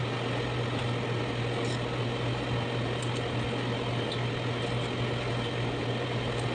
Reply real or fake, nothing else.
real